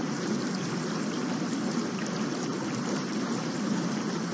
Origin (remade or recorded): recorded